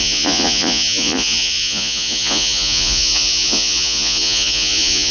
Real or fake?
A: fake